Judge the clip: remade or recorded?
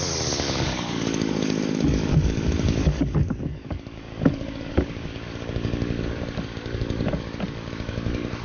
remade